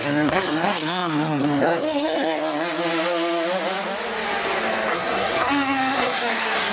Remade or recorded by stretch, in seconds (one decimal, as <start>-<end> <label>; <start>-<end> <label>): 0.0-2.4 remade; 2.4-4.9 recorded; 4.9-6.7 remade

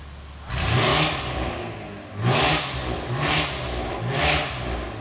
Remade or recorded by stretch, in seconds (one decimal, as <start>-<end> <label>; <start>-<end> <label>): 0.0-5.0 recorded

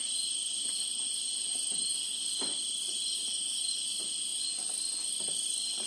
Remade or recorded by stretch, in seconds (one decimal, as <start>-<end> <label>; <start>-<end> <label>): 0.0-5.9 recorded

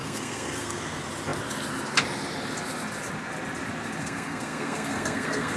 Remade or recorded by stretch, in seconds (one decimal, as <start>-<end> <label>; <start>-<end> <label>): 0.0-0.8 remade; 0.8-4.0 recorded; 4.0-5.6 remade

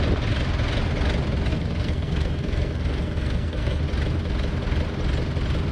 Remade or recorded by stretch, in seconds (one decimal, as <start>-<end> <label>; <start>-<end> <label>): 0.0-1.5 recorded; 1.5-3.8 remade; 3.8-5.7 recorded

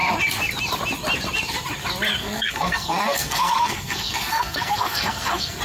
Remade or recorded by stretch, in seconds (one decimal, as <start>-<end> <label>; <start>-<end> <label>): 0.0-2.2 recorded; 2.2-5.6 remade

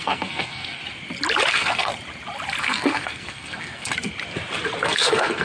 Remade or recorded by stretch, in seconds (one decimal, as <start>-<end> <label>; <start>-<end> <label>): 0.0-0.8 remade; 0.8-1.5 recorded; 1.5-1.9 remade; 1.9-2.6 recorded; 2.6-3.9 remade; 3.9-4.8 recorded; 4.8-5.4 remade